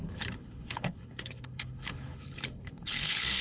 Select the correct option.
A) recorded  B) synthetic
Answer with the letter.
B